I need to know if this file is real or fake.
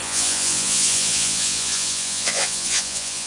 fake